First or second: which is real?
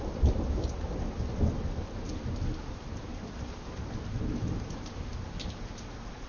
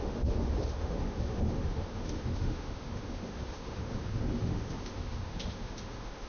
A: first